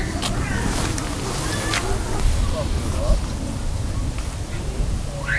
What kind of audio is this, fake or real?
real